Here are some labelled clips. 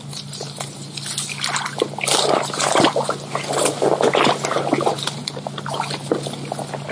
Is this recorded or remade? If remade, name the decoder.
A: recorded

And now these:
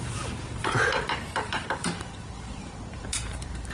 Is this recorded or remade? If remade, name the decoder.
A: remade, vocoder, BigVGAN v2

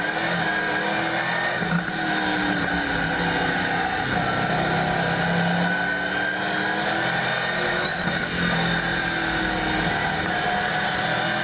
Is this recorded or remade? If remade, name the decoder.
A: recorded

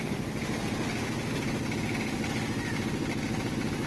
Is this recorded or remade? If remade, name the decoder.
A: recorded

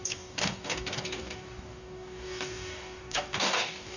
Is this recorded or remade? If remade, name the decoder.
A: remade, codec, DAC